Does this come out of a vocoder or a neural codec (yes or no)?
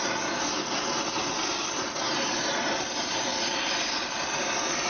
no